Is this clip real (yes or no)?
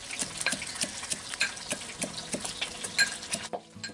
yes